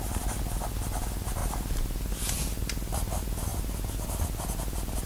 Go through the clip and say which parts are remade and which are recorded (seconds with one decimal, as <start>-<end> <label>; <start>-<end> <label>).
0.0-5.1 recorded